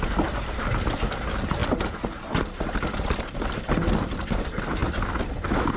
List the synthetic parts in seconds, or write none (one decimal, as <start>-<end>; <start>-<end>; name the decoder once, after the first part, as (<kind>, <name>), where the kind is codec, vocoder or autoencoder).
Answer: none